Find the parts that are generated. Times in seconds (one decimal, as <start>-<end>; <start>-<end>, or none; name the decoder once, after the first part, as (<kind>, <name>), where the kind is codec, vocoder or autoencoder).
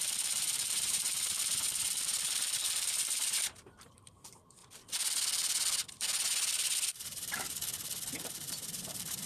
0.0-4.6 (vocoder, BigVGAN v2); 6.9-7.6; 8.3-9.3